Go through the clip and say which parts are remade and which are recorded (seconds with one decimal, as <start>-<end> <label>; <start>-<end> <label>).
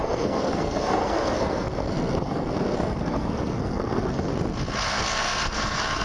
0.0-4.3 remade; 4.3-4.9 recorded; 4.9-6.0 remade